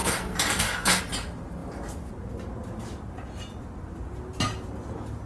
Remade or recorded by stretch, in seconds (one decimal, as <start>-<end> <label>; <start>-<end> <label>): 0.0-1.0 remade; 1.0-5.3 recorded